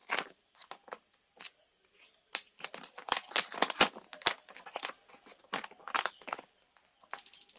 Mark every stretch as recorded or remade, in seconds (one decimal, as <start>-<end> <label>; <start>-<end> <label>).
0.0-7.6 recorded